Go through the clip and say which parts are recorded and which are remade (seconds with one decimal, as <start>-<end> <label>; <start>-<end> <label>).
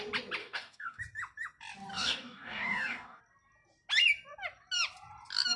0.0-0.4 recorded; 0.4-1.0 remade; 1.0-1.9 recorded; 1.9-3.2 remade; 3.2-5.6 recorded